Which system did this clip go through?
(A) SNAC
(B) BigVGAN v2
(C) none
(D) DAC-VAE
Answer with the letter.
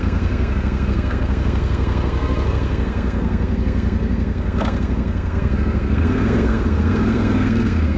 A